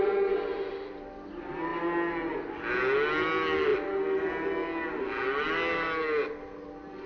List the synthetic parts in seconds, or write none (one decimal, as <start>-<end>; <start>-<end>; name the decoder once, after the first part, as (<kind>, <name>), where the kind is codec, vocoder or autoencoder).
none